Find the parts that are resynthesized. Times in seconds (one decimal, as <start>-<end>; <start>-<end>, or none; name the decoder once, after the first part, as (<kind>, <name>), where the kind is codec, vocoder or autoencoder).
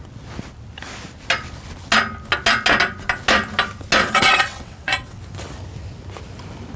4.0-5.2 (vocoder, WaveNeXt)